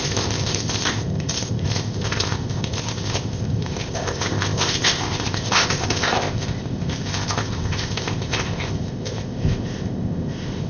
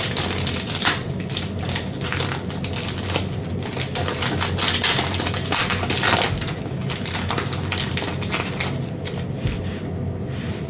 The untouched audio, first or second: second